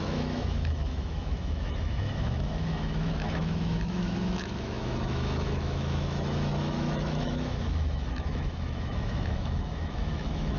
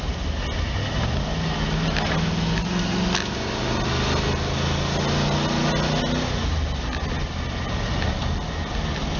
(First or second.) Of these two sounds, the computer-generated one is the first